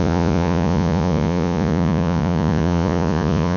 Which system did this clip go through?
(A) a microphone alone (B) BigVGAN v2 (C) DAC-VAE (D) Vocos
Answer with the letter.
D